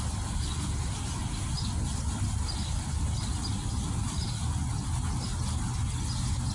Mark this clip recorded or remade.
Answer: recorded